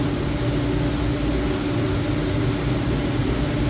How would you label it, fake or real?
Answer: real